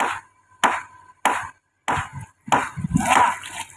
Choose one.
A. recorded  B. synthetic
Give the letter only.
A